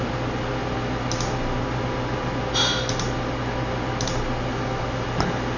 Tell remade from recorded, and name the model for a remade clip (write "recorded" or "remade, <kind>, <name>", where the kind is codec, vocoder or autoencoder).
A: recorded